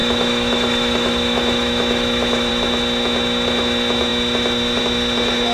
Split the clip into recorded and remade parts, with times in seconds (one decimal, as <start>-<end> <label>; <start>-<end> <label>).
0.0-2.5 remade; 2.5-5.5 recorded